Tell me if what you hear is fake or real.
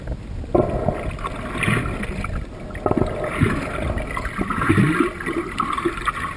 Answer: real